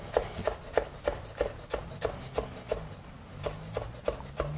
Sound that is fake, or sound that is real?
real